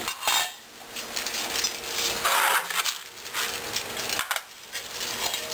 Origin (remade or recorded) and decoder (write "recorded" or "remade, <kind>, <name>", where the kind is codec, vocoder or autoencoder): recorded